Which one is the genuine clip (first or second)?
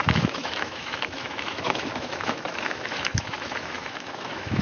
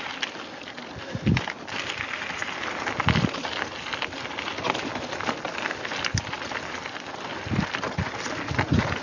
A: second